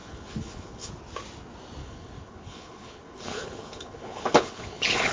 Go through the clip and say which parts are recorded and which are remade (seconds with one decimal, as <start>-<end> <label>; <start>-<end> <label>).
0.0-0.9 remade; 0.9-1.8 recorded; 1.8-5.1 remade